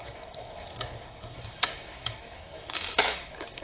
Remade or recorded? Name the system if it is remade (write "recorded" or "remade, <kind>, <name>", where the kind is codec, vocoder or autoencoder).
remade, autoencoder, DAC-VAE